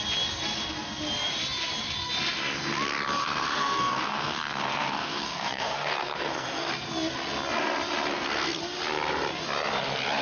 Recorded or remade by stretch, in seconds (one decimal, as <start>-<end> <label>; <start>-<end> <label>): 0.0-3.2 recorded; 3.2-6.7 remade; 6.7-8.1 recorded; 8.1-8.6 remade; 8.6-10.2 recorded